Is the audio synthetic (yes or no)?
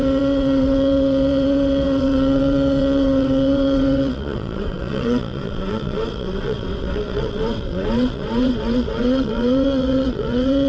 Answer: yes